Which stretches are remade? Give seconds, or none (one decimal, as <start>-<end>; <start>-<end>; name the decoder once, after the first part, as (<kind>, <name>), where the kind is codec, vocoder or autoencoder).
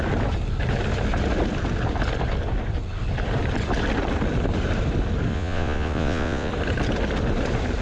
5.3-6.5 (vocoder, Vocos)